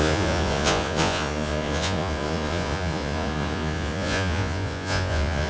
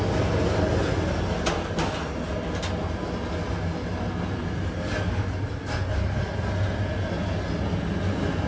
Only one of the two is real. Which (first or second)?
second